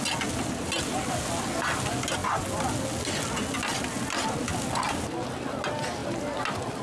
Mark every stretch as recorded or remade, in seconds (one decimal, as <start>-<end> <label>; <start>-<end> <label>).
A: 0.0-6.8 recorded